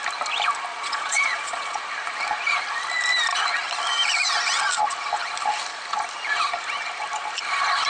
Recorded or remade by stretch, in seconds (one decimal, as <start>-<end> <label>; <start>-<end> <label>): 0.0-0.7 recorded; 0.7-1.8 remade; 1.8-7.9 recorded